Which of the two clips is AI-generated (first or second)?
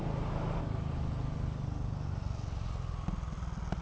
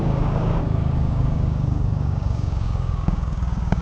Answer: second